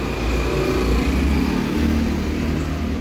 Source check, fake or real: real